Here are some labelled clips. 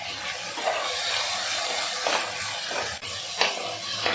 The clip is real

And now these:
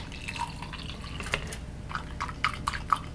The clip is real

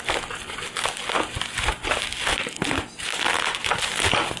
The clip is real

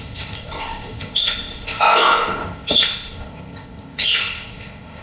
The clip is fake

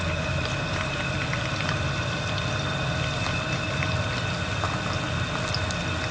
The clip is real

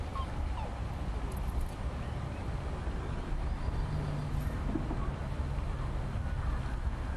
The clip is real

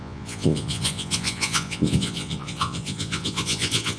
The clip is fake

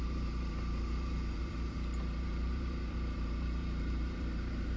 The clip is fake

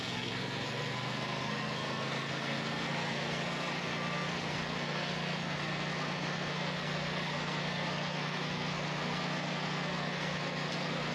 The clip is fake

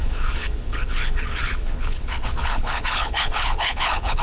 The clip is fake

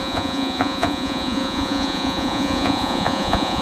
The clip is fake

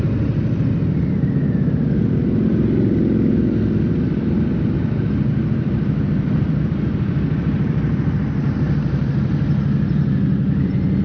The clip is real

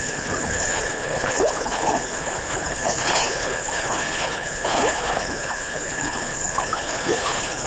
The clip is fake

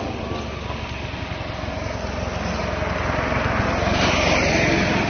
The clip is real